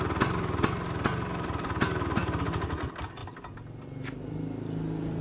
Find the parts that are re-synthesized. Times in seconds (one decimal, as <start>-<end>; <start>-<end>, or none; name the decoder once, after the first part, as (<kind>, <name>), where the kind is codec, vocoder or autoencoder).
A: none